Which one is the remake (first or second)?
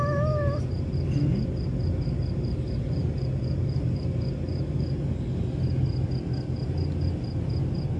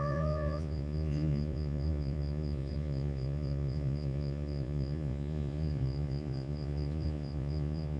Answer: second